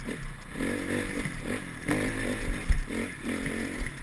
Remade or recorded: recorded